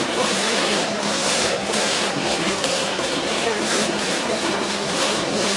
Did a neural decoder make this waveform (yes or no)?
yes